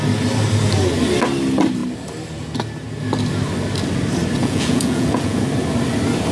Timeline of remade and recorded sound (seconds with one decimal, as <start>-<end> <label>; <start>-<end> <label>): 0.0-4.4 recorded; 4.4-5.4 remade; 5.4-6.3 recorded